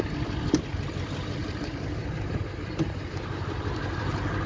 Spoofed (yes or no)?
yes